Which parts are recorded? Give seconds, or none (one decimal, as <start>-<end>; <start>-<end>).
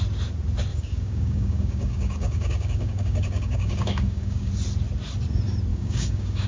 0.0-0.7; 4.5-5.7